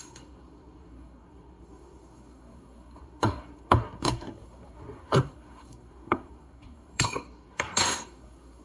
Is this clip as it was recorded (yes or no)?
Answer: no